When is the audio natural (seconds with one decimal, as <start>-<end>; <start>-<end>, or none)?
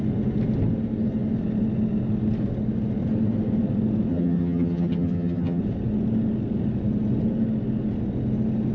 0.0-4.1; 5.6-8.7